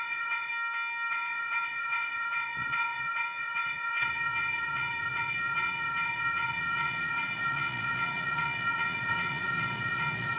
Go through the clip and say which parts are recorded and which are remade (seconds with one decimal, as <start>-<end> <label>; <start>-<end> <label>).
0.0-0.5 remade; 0.5-1.1 recorded; 1.1-10.4 remade

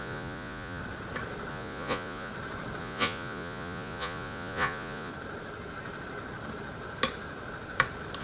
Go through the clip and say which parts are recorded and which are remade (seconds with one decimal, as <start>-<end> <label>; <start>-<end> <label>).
0.0-0.8 remade; 0.8-1.5 recorded; 1.5-2.3 remade; 2.3-2.8 recorded; 2.8-5.1 remade; 5.1-8.2 recorded

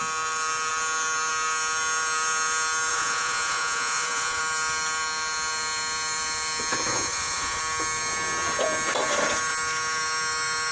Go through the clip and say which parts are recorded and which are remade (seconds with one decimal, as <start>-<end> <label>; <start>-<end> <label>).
0.0-2.9 recorded; 2.9-4.4 remade; 4.4-6.9 recorded; 6.9-7.6 remade; 7.6-10.7 recorded

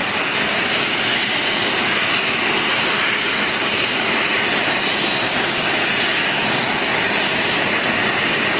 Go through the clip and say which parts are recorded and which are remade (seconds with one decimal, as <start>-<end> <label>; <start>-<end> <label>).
0.0-3.9 recorded; 3.9-4.4 remade; 4.4-8.6 recorded

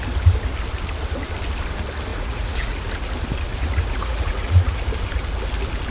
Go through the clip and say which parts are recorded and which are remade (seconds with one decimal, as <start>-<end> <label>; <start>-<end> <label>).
0.0-2.1 recorded; 2.1-2.9 remade; 2.9-3.5 recorded; 3.5-4.8 remade; 4.8-5.9 recorded